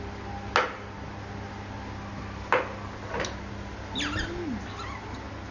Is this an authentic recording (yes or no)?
yes